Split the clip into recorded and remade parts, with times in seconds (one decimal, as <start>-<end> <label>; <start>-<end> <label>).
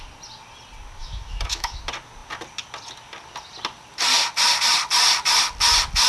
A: 0.0-1.0 recorded; 1.0-1.8 remade; 1.8-6.1 recorded